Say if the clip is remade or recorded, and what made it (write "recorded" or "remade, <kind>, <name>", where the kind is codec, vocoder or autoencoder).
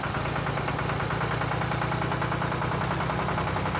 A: recorded